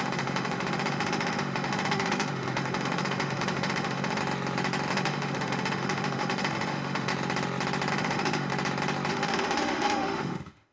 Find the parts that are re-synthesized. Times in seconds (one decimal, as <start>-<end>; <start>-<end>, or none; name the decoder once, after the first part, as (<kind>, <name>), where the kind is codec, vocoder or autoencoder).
0.0-4.2 (autoencoder, DAC-VAE); 4.9-7.1; 7.9-8.5; 9.1-10.7